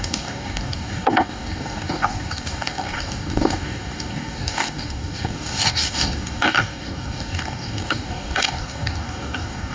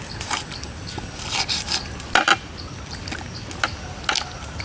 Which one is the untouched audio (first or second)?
second